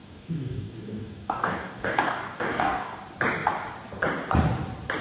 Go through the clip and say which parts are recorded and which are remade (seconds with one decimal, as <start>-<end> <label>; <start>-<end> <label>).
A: 0.0-3.0 remade; 3.0-5.0 recorded